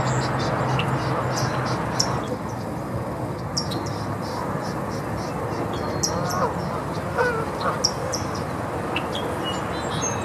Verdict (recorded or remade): recorded